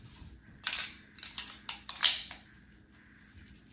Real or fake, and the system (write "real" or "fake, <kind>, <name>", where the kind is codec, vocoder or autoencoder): real